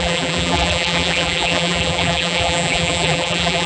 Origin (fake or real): fake